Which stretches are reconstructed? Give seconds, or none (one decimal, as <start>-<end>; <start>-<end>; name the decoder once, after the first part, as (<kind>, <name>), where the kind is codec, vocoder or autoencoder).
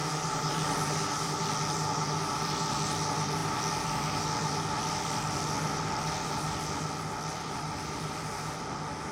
none